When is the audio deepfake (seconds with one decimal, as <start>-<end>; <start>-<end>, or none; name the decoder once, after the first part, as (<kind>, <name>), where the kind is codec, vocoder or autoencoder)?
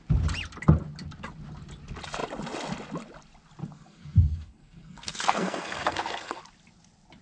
3.6-6.4 (codec, SNAC)